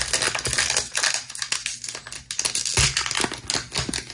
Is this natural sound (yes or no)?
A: yes